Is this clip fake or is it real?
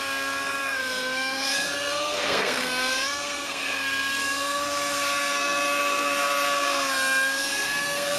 fake